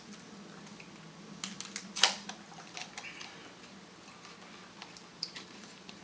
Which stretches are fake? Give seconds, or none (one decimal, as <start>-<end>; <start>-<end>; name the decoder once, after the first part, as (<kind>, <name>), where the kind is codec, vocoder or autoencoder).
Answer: 5.1-6.0 (vocoder, BigVGAN v2)